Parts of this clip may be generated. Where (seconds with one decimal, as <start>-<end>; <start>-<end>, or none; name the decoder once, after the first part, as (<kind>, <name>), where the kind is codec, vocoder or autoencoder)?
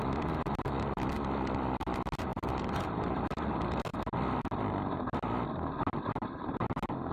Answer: none